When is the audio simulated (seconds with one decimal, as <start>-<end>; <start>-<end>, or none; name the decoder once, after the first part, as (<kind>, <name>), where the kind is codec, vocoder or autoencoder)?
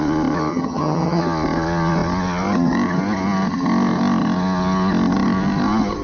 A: 0.5-1.2 (vocoder, HiFi-GAN)